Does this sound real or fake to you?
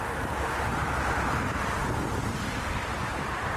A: real